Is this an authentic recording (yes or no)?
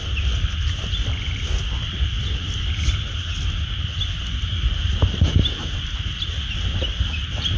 yes